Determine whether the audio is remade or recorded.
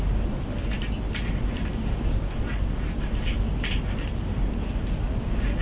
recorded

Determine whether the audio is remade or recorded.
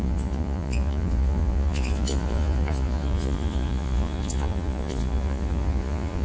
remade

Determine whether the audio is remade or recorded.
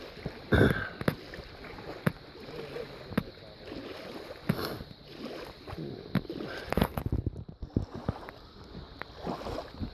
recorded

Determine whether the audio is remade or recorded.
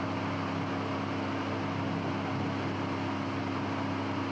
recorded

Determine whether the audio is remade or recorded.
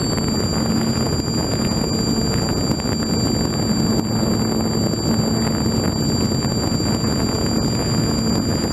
recorded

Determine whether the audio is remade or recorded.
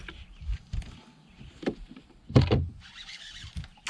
recorded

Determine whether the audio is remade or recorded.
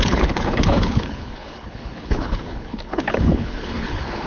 remade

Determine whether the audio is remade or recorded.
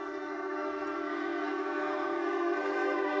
remade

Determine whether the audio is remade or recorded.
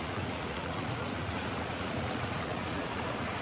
remade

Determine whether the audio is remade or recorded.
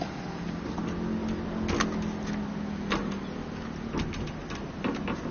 recorded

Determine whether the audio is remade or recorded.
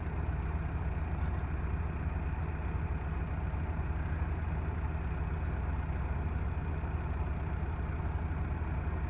recorded